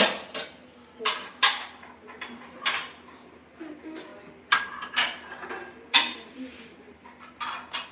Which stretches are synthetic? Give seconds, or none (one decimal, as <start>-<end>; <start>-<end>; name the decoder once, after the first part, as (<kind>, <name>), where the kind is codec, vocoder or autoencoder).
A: none